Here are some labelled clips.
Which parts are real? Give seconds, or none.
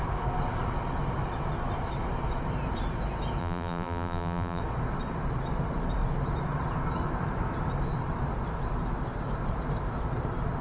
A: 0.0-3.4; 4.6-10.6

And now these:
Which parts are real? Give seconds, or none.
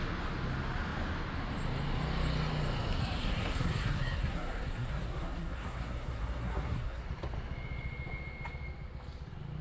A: 0.0-3.0; 7.0-9.6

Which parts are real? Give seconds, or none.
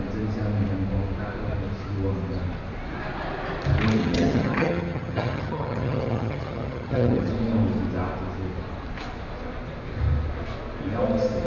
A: 0.0-4.0; 7.3-11.5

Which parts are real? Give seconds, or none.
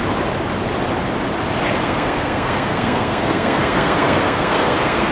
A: 0.0-1.8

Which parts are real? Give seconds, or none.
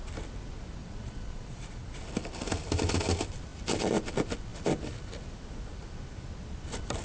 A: 0.0-0.8; 2.0-7.0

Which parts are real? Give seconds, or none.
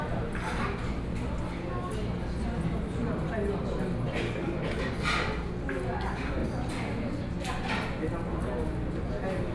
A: 0.0-4.4; 4.9-9.5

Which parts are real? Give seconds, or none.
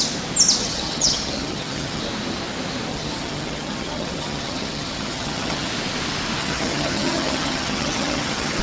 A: 0.0-0.6; 2.0-2.9; 5.7-6.4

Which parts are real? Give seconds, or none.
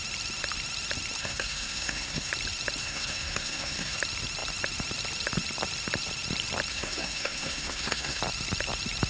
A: 0.0-1.2; 2.3-2.8; 4.0-6.7; 8.2-9.1